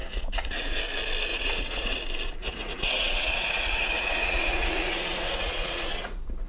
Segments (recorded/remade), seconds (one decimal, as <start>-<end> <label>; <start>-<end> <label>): 0.0-0.8 remade; 0.8-1.3 recorded; 1.3-2.0 remade; 2.0-2.4 recorded; 2.4-6.5 remade